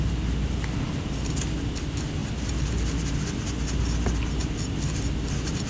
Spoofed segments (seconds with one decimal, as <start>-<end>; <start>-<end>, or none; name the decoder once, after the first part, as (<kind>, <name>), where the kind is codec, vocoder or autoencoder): none